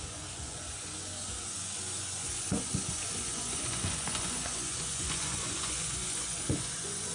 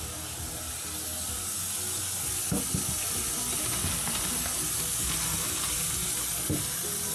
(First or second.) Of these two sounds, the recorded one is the second